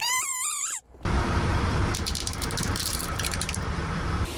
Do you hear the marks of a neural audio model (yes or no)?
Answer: yes